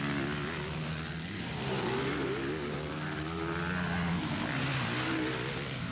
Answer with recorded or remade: recorded